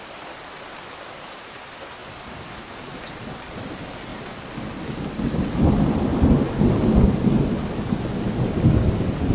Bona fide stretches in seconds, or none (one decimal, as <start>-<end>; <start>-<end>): 0.0-9.3

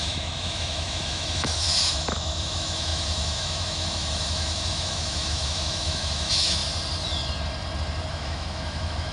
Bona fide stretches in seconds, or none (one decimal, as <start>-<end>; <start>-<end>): 6.6-8.1

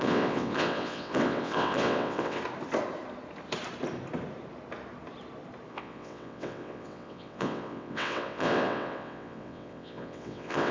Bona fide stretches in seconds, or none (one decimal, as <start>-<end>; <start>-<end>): 2.4-5.7

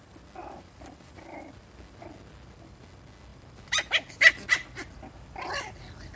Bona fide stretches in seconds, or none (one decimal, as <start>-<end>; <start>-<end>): 0.0-0.4; 1.5-3.3; 3.9-6.2

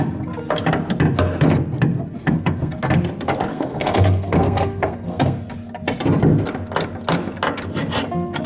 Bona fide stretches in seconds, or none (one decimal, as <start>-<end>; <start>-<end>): 0.0-2.2; 2.7-3.5; 5.5-8.5